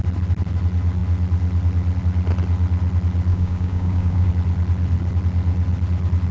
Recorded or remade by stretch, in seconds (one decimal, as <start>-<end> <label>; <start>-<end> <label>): 0.0-3.3 recorded; 3.3-4.3 remade; 4.3-6.3 recorded